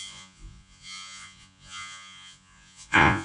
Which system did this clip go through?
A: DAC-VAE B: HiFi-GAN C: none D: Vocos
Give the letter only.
D